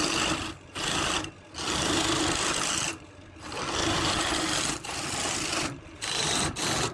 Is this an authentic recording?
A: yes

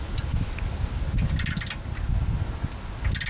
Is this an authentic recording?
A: yes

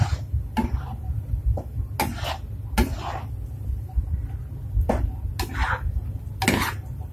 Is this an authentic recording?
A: yes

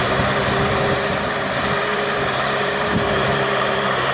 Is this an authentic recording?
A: no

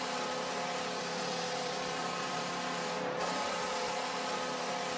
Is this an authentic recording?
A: no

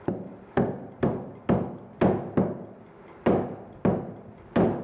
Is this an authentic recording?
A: yes